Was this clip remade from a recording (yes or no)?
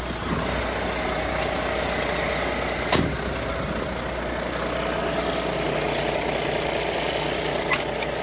no